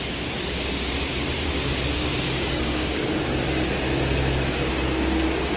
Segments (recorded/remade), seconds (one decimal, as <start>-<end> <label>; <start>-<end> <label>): 0.0-1.9 recorded; 1.9-3.0 remade; 3.0-5.6 recorded